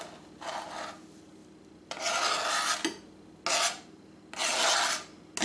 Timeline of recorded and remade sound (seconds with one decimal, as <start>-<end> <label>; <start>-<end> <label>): 0.0-1.4 recorded; 1.4-2.3 remade; 2.3-5.4 recorded